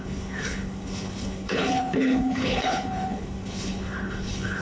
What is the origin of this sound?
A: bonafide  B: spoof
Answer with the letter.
B